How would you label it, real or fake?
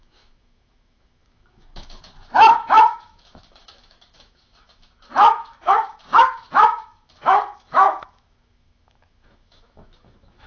fake